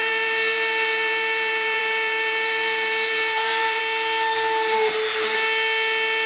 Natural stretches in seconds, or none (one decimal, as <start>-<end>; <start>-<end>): 3.8-6.3